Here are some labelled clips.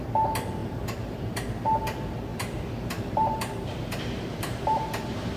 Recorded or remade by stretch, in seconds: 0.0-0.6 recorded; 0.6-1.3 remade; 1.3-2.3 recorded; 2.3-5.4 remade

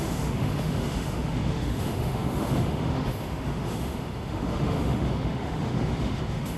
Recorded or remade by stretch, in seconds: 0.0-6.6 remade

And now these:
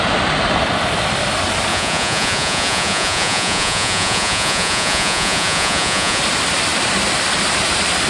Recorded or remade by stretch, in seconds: 0.0-1.7 recorded; 1.7-6.2 remade; 6.2-8.1 recorded

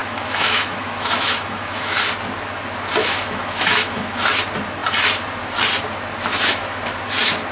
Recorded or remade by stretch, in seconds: 0.0-2.1 remade; 2.1-3.0 recorded; 3.0-4.3 remade; 4.3-6.3 recorded; 6.3-6.8 remade; 6.8-7.5 recorded